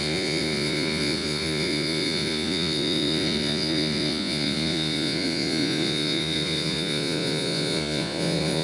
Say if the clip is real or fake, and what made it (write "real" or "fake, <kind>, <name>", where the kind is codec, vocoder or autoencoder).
fake, vocoder, Vocos